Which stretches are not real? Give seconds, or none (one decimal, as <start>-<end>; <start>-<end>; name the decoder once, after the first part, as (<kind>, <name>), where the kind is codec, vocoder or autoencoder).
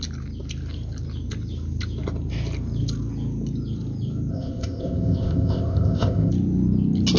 4.3-6.3 (codec, ZipCodec)